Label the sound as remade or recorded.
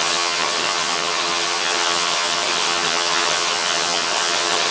remade